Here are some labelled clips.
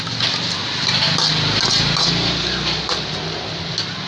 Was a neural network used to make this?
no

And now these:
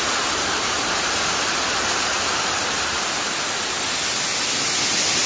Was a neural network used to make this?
no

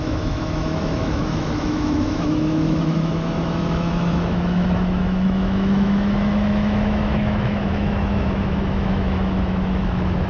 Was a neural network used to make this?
yes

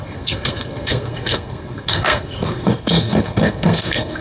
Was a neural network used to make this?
yes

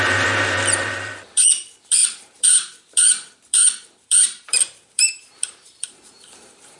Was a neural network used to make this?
yes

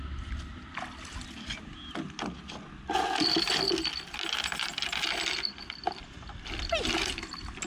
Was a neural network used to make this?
no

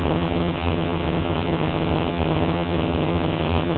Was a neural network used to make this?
yes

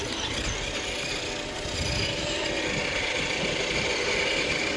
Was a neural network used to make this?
no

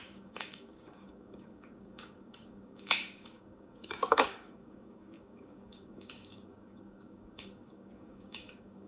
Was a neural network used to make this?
yes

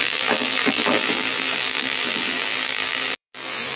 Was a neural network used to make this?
yes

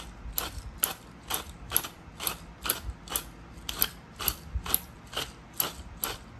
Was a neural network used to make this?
no